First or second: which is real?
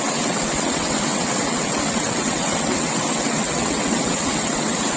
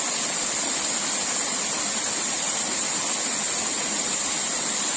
second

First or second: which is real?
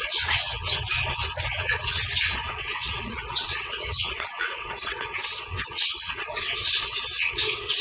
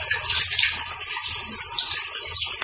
second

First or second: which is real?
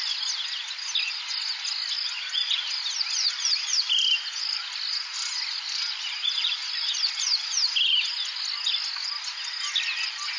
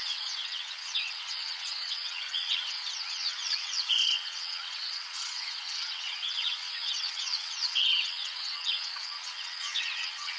first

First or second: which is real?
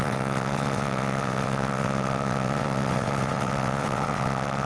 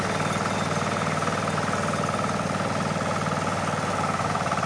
second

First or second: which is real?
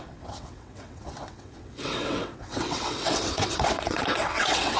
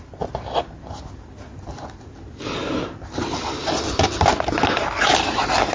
second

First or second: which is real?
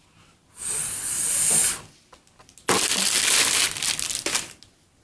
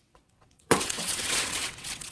first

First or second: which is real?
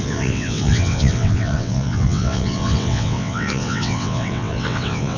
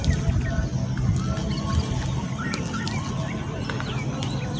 second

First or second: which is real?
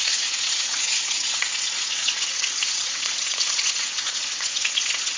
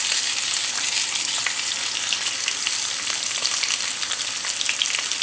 second